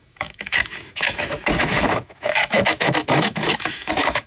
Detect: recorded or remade remade